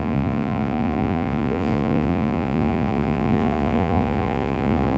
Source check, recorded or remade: remade